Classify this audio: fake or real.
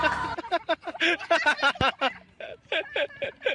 real